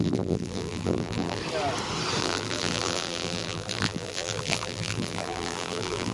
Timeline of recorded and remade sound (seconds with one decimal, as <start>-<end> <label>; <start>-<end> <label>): 0.0-1.4 remade; 1.4-2.2 recorded; 2.2-6.1 remade